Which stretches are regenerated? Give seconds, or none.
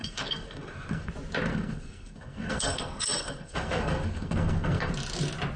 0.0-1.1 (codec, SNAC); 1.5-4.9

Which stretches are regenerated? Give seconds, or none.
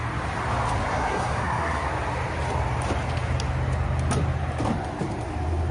0.9-1.9 (codec, SNAC)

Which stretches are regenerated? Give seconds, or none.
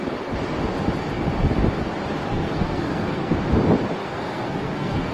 2.3-3.3 (codec, SNAC); 4.0-5.1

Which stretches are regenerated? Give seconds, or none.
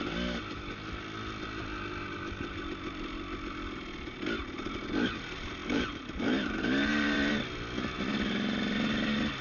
5.6-7.3 (vocoder, BigVGAN v2)